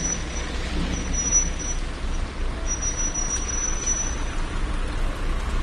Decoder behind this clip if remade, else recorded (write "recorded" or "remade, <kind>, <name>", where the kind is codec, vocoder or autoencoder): recorded